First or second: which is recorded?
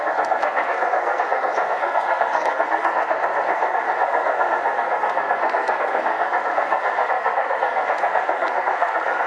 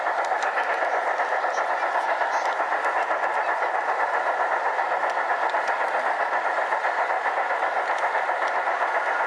second